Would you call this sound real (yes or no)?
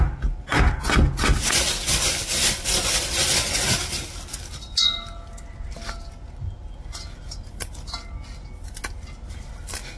yes